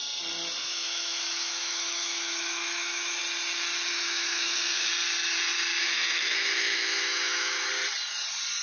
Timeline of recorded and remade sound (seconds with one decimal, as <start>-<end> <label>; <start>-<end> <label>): 0.0-0.6 recorded; 0.6-3.2 remade; 3.2-3.9 recorded; 3.9-4.9 remade; 4.9-5.8 recorded; 5.8-7.7 remade; 7.7-8.6 recorded